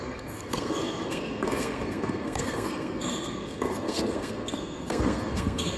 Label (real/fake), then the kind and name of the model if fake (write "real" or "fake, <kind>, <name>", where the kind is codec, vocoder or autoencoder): fake, codec, SNAC